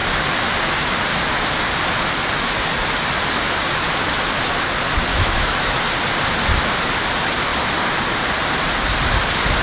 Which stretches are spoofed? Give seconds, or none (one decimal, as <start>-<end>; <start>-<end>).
5.1-5.8